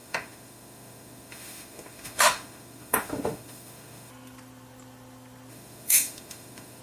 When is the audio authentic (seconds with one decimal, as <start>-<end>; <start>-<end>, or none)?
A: 4.1-5.5